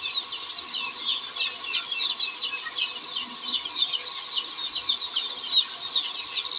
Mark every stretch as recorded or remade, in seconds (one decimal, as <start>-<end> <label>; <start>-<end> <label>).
0.0-6.6 recorded